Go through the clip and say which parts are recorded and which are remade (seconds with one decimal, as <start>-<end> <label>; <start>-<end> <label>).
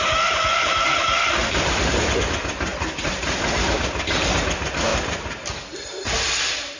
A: 0.0-1.4 recorded; 1.4-2.3 remade; 2.3-2.7 recorded; 2.7-4.3 remade; 4.3-4.9 recorded; 4.9-5.9 remade; 5.9-6.8 recorded